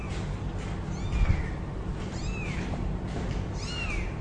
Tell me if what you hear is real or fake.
real